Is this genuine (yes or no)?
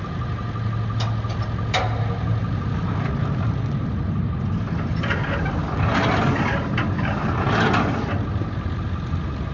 yes